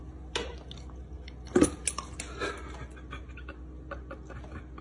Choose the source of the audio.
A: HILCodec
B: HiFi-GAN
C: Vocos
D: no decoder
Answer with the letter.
D